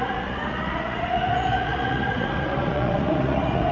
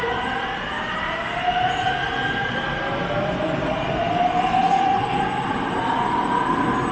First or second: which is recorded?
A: second